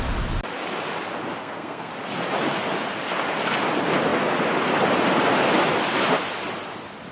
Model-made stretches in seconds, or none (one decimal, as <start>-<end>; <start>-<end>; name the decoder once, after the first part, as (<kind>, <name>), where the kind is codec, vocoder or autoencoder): 1.4-1.9 (codec, SNAC)